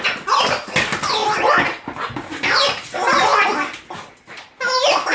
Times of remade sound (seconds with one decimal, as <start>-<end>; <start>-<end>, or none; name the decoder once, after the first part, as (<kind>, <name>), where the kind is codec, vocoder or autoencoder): none